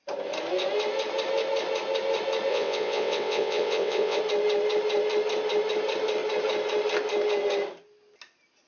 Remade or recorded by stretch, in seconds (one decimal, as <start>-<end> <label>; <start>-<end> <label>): 0.0-2.5 recorded; 2.5-4.2 remade; 4.2-8.7 recorded